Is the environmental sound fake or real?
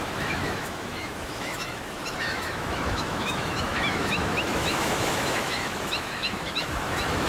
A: fake